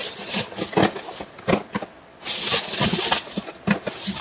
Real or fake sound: real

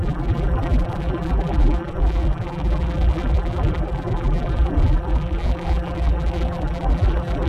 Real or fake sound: fake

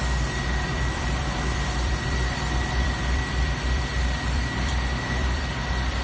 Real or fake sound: fake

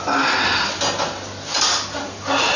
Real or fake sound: real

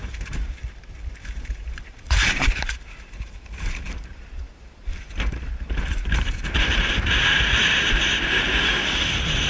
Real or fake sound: fake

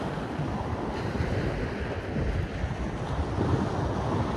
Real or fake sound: real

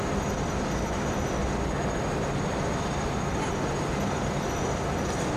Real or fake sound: real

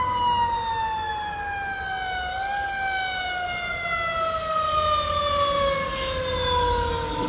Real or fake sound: real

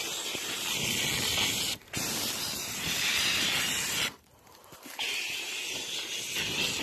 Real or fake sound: real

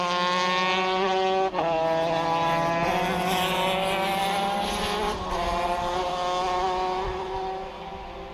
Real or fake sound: real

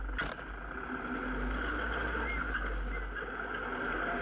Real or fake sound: real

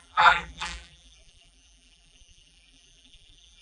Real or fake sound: fake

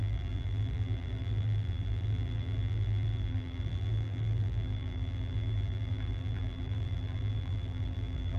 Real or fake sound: fake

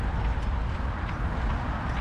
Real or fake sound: fake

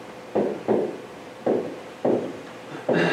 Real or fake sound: fake